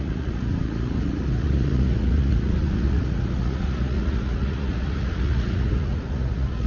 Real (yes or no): no